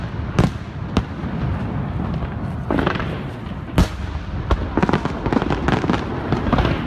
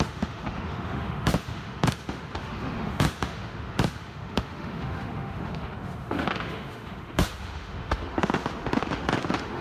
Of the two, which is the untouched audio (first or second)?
first